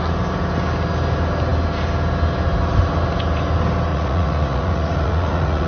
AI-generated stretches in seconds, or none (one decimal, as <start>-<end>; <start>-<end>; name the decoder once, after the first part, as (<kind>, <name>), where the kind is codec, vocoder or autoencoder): 3.9-5.7 (vocoder, Vocos)